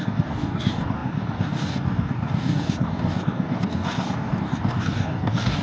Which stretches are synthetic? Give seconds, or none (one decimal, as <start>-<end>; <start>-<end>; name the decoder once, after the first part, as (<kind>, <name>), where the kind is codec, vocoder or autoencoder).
0.0-5.6 (codec, DAC)

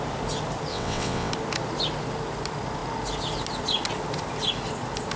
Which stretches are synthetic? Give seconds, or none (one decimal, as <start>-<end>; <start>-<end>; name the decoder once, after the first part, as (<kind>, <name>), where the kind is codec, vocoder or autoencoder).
0.7-1.3 (vocoder, WaveNeXt)

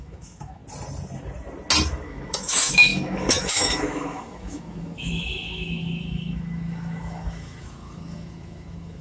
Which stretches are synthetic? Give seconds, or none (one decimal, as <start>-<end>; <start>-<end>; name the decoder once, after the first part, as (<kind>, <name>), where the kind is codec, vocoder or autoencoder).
0.0-0.6 (autoencoder, DAC-VAE); 1.9-9.0

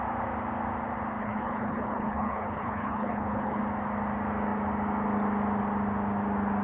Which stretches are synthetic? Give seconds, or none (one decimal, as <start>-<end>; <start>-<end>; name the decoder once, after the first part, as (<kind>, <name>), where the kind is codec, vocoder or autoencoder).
1.2-3.6 (codec, HILCodec)

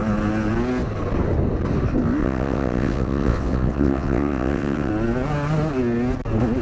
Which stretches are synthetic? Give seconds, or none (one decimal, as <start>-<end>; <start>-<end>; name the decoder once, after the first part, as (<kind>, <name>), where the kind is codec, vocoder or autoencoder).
2.2-4.9 (vocoder, WaveNeXt)